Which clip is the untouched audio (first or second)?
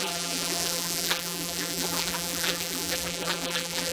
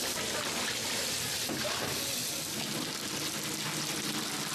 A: second